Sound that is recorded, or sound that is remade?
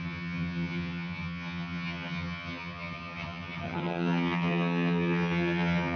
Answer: remade